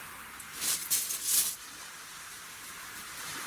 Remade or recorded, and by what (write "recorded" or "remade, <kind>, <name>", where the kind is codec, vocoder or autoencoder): remade, vocoder, BigVGAN v2